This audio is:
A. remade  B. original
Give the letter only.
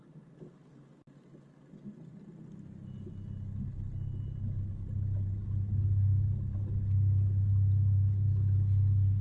B